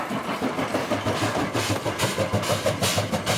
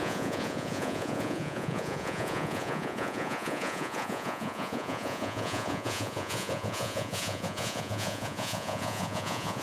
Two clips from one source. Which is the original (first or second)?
first